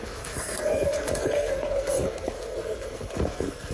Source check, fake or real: fake